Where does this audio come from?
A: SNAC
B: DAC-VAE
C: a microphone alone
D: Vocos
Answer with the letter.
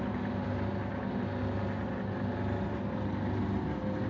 C